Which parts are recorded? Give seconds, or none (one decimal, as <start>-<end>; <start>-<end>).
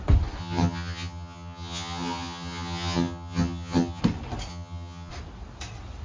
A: 0.0-0.4; 4.0-4.5; 5.1-6.0